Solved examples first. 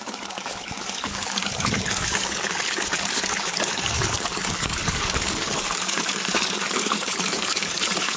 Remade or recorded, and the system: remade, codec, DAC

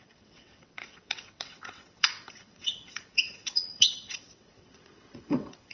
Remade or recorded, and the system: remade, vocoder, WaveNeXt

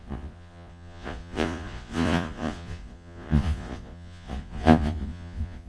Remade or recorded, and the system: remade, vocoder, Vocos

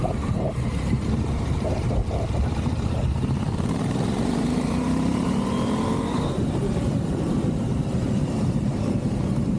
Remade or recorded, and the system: remade, vocoder, BigVGAN v2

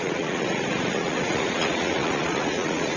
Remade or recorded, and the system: remade, vocoder, Vocos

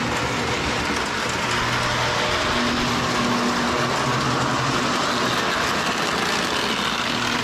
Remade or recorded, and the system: recorded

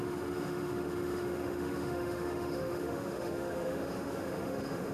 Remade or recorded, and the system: remade, autoencoder, DAC-VAE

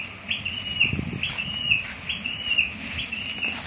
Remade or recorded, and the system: recorded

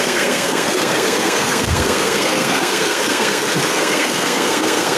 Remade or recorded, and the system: remade, codec, SNAC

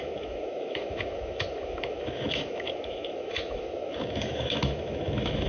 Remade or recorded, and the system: remade, autoencoder, DAC-VAE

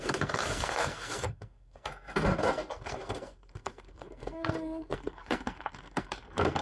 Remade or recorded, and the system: remade, codec, SNAC